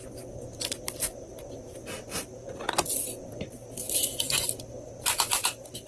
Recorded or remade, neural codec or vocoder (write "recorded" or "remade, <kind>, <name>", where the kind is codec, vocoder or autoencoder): recorded